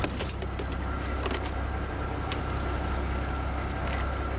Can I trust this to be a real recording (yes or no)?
yes